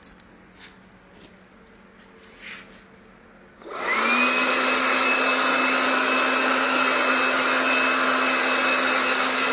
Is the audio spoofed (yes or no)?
no